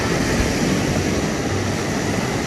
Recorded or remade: recorded